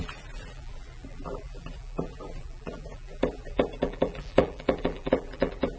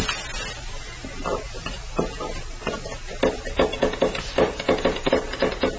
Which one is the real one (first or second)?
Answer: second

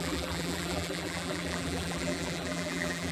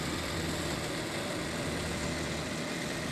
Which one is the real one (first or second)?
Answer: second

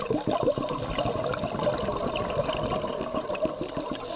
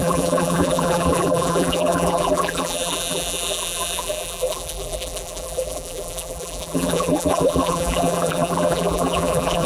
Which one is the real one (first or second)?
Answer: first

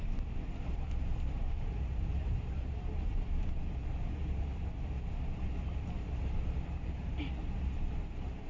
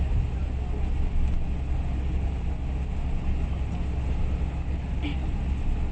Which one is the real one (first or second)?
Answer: second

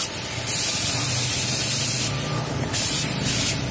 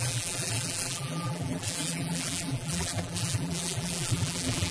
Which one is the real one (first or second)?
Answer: first